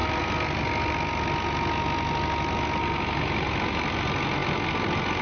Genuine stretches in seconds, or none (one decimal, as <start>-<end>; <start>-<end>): 0.0-5.2